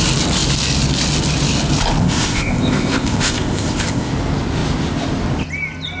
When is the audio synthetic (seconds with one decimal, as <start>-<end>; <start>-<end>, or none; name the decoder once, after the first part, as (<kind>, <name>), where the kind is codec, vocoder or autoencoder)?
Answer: 2.0-4.1 (codec, ZipCodec)